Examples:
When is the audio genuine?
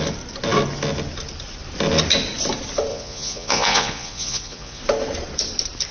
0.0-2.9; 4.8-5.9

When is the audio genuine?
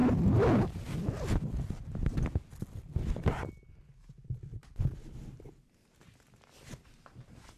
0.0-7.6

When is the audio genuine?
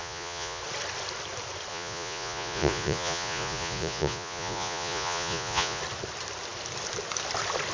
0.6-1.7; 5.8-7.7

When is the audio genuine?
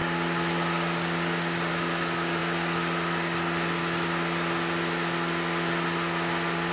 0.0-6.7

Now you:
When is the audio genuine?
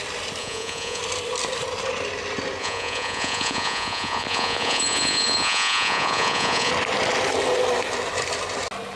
0.0-0.4; 1.0-2.6; 6.7-9.0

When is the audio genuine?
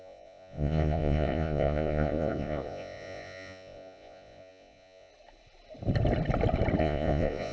5.1-6.8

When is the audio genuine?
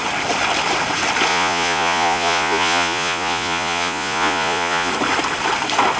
0.0-1.3; 4.9-6.0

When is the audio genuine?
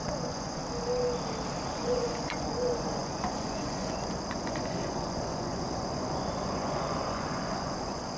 0.6-1.7